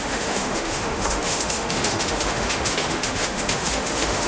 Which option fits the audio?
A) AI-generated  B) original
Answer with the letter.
A